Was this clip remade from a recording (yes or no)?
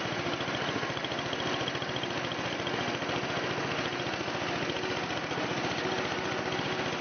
no